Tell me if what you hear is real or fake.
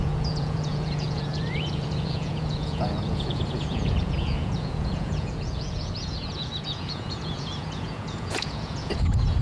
fake